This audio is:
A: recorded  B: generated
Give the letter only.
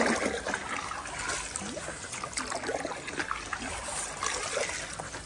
A